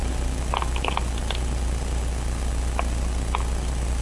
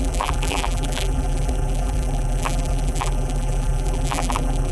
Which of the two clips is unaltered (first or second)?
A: first